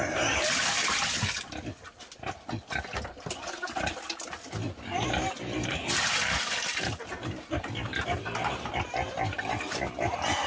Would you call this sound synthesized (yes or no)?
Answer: no